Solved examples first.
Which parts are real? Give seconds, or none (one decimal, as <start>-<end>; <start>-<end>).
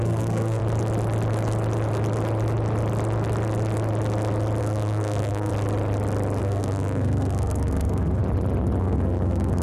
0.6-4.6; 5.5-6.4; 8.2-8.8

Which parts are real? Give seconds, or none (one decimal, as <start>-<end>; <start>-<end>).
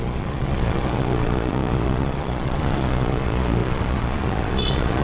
none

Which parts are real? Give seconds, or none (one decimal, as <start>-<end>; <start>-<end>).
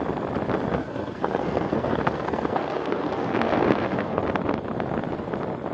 0.0-0.8; 4.2-5.7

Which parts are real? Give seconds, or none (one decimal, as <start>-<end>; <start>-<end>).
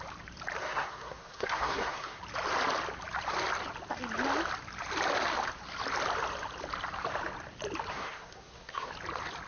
0.0-0.6; 2.2-7.9; 8.9-9.5